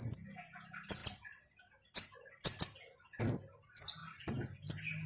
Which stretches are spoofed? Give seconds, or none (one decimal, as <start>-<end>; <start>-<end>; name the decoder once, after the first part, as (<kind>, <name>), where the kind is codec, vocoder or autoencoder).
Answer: none